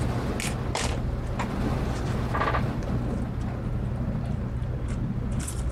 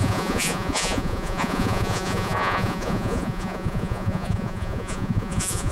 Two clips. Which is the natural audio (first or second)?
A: first